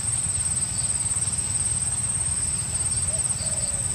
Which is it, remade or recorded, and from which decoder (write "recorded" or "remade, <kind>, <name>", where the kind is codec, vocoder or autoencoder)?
recorded